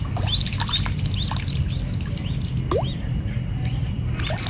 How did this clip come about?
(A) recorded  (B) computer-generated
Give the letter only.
A